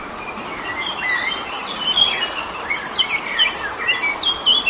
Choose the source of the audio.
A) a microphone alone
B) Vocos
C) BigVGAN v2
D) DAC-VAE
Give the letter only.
A